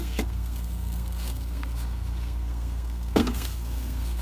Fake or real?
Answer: fake